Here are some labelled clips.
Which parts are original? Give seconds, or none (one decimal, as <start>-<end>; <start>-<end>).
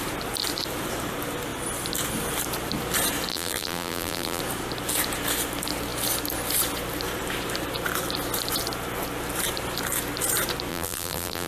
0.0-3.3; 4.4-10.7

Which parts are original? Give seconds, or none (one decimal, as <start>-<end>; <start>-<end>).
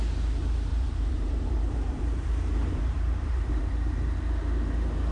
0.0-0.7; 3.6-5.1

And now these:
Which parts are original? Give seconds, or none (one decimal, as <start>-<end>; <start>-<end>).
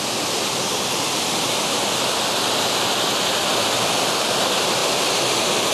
0.0-5.7